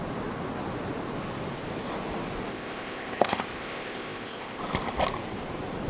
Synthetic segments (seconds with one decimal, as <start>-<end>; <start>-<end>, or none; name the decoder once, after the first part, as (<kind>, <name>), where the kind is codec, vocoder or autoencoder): 2.5-4.6 (codec, ZipCodec)